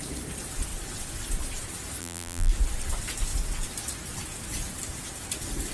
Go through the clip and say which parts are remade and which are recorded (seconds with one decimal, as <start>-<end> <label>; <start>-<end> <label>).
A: 0.0-2.0 recorded; 2.0-2.5 remade; 2.5-5.7 recorded